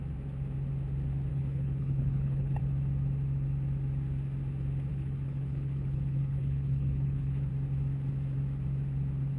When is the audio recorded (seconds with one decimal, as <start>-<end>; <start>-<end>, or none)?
0.0-1.3; 2.6-4.9; 7.5-9.4